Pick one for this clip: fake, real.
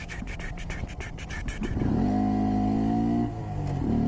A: real